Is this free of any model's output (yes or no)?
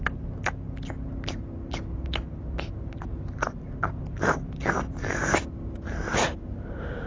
yes